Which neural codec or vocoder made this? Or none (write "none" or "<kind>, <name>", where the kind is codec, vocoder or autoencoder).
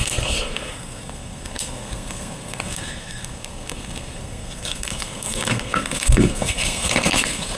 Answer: codec, SNAC